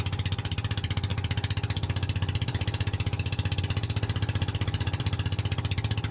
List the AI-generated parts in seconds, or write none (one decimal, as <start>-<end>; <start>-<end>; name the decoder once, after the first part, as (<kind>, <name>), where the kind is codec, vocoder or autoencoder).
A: 0.0-6.1 (vocoder, BigVGAN v2)